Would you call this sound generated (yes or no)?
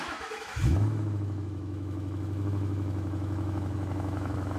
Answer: yes